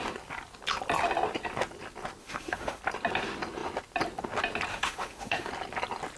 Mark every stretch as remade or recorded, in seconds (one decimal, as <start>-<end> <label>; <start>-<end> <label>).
0.0-2.2 recorded; 2.2-2.8 remade; 2.8-4.7 recorded; 4.7-5.5 remade; 5.5-6.2 recorded